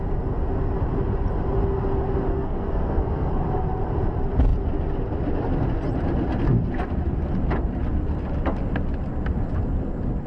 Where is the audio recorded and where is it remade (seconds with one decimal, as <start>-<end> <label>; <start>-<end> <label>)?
0.0-2.3 recorded; 2.3-3.3 remade; 3.3-10.3 recorded